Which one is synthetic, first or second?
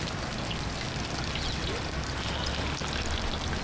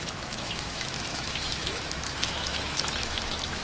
second